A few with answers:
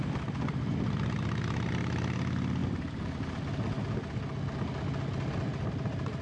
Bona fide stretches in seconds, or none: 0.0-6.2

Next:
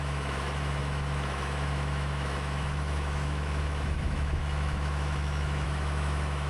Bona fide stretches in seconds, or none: none

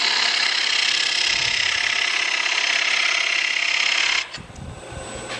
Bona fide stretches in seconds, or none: 0.0-5.4

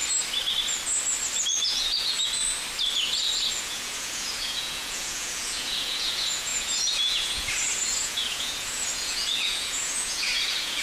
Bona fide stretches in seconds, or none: 0.0-1.6; 2.4-3.6

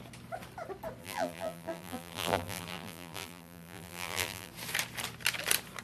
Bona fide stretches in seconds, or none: 0.0-1.0; 4.5-5.8

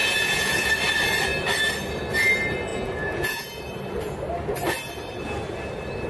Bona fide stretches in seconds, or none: 0.7-2.7; 3.6-6.1

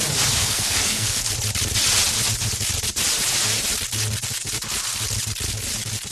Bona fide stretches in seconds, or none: 0.0-0.4; 1.3-6.1